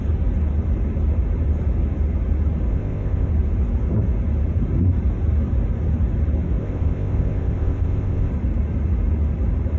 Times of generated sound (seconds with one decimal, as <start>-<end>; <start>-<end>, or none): 2.7-3.3; 6.6-8.3

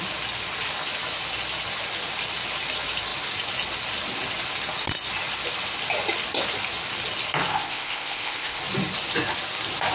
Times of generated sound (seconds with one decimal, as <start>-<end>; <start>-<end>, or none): 7.5-8.6

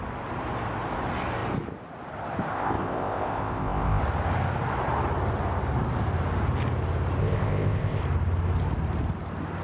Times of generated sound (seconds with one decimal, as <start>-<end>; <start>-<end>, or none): 2.5-4.0; 7.2-8.0

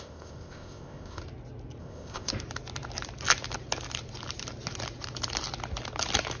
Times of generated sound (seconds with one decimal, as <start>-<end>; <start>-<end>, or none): 0.0-1.2; 1.8-2.3

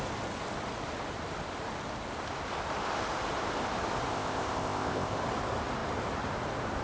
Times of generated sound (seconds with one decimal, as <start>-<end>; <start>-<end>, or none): 4.1-5.2

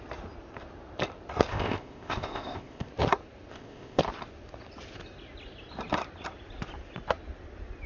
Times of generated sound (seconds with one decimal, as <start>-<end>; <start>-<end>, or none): 1.5-2.9; 3.5-4.0